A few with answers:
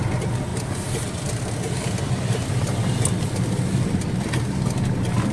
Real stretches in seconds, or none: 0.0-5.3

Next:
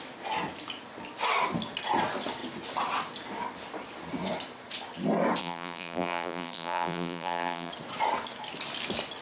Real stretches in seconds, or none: 0.0-5.4; 7.7-9.2

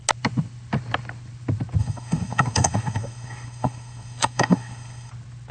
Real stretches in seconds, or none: 0.0-1.8; 5.1-5.5

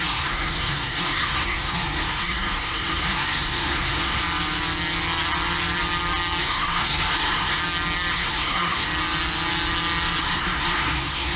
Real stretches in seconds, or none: 4.2-6.4; 7.6-8.1; 8.9-10.2

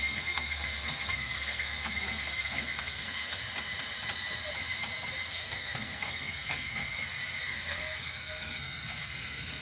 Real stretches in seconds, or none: 3.4-5.3; 6.8-7.4

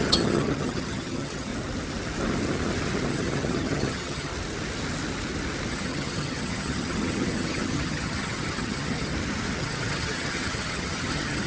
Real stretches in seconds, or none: 1.5-3.1; 4.3-5.7; 9.1-9.6

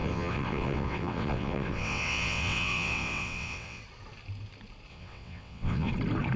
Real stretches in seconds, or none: 3.8-4.9; 5.9-6.4

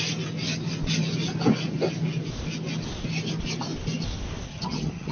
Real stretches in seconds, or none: 0.0-4.5